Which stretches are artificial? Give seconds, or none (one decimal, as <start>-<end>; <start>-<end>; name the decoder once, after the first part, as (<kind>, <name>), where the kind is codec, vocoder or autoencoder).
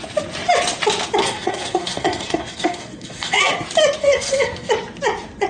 1.2-3.5 (codec, SNAC); 4.0-4.7